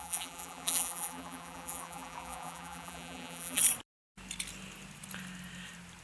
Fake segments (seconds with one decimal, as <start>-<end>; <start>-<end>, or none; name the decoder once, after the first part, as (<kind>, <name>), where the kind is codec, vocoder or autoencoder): 0.0-3.6 (vocoder, BigVGAN v2)